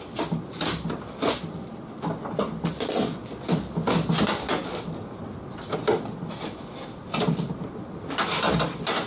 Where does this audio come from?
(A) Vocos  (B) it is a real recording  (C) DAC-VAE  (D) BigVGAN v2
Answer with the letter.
B